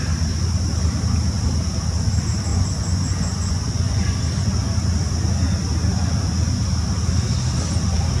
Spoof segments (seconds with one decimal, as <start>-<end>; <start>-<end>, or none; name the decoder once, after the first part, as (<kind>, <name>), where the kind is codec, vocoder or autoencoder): 2.5-4.2 (vocoder, Vocos)